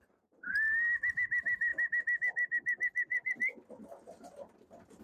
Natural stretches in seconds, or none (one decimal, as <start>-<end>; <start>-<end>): 0.0-5.0